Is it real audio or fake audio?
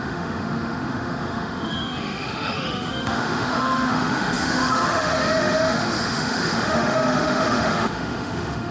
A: fake